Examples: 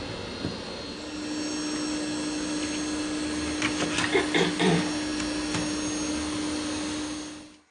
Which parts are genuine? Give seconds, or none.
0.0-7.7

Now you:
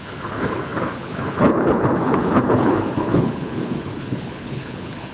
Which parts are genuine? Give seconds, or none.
none

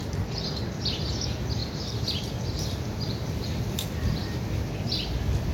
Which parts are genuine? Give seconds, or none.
0.0-1.6; 3.6-5.5